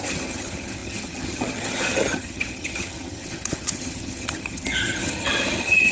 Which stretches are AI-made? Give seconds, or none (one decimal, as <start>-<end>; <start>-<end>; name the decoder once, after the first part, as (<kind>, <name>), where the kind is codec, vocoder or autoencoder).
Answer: 0.0-5.9 (vocoder, HiFi-GAN)